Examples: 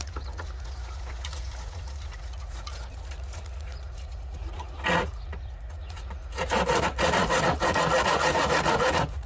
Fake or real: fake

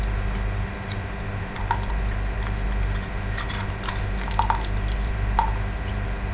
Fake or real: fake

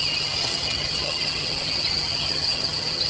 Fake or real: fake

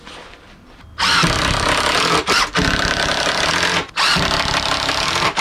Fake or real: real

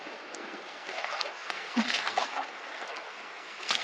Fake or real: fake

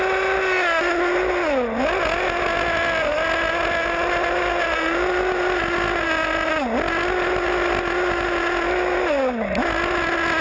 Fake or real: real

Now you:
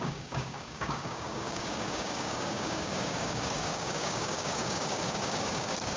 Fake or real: fake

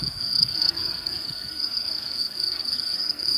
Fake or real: fake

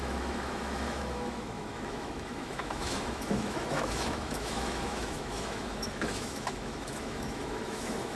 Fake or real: fake